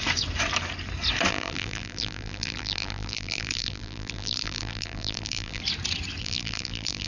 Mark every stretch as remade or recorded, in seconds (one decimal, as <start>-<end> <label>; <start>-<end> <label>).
0.0-1.3 recorded; 1.3-5.6 remade; 5.6-6.2 recorded; 6.2-7.1 remade